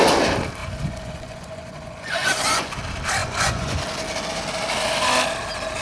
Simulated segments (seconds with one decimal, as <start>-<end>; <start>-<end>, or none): 0.6-2.8; 3.2-3.8